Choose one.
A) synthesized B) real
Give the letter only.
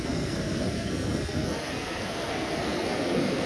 A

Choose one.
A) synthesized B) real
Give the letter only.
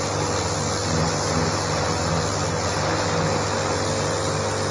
B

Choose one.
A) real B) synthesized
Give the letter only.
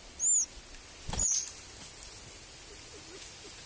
A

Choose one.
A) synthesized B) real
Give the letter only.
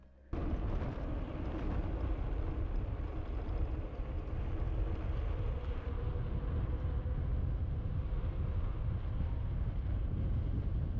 B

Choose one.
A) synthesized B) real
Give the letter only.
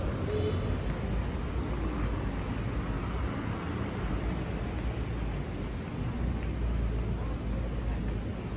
B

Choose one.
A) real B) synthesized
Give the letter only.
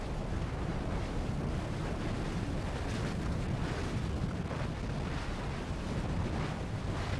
A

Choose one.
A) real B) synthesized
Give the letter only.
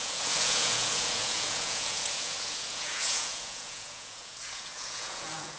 B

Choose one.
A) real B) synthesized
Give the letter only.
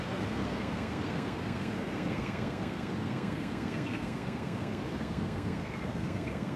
B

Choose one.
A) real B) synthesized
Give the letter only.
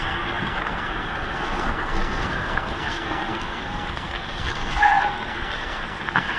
B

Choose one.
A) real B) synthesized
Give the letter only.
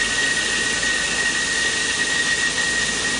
A